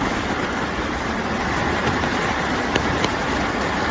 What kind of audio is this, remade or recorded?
recorded